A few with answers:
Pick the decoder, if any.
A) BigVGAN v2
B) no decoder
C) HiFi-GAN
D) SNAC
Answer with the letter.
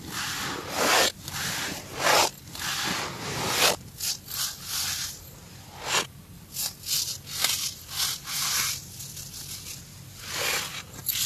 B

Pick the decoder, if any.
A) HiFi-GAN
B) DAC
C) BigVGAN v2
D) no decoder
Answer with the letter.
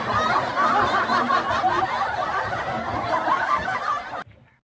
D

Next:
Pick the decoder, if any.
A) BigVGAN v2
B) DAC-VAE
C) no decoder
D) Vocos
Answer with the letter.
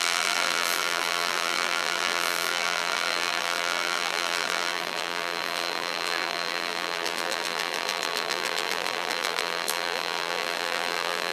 A